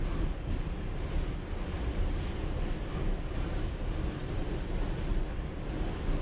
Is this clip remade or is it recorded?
recorded